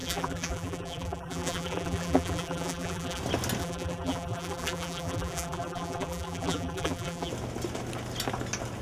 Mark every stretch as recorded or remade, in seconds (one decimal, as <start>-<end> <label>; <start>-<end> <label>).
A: 0.0-3.2 remade; 3.2-3.6 recorded; 3.6-7.3 remade; 7.3-8.8 recorded

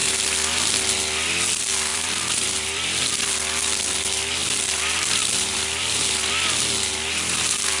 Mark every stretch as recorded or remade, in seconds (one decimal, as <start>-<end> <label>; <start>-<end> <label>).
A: 0.0-0.7 remade; 0.7-1.9 recorded; 1.9-3.0 remade; 3.0-4.4 recorded; 4.4-6.3 remade; 6.3-7.8 recorded

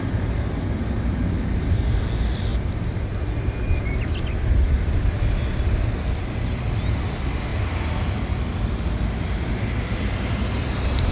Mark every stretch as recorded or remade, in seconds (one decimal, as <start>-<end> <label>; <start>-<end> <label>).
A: 0.0-2.5 recorded; 2.5-5.6 remade; 5.6-7.5 recorded; 7.5-9.2 remade; 9.2-11.1 recorded

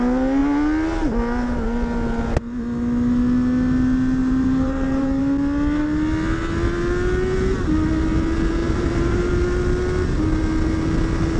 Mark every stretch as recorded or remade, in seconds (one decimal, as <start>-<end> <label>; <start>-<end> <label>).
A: 0.0-4.2 recorded; 4.2-5.2 remade; 5.2-8.6 recorded; 8.6-9.3 remade; 9.3-11.4 recorded